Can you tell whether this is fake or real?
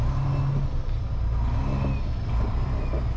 real